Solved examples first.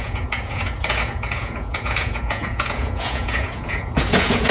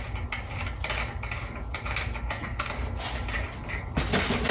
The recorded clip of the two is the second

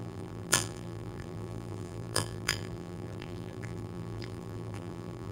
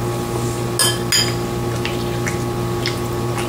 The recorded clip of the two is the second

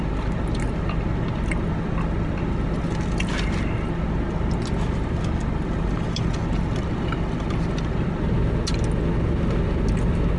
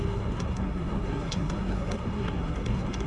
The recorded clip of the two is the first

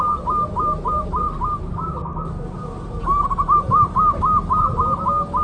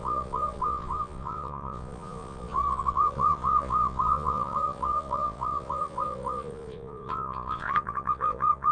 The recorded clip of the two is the first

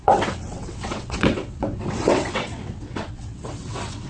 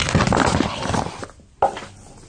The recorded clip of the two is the second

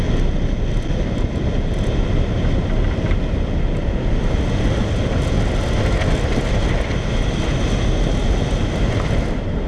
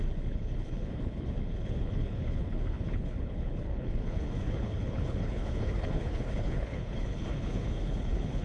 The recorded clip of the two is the first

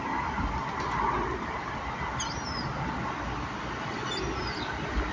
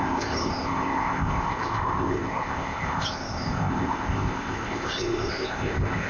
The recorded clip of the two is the first